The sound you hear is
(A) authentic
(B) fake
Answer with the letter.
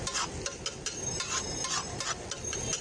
A